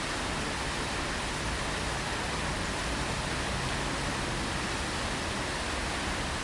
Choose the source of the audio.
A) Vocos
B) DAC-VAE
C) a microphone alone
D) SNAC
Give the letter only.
C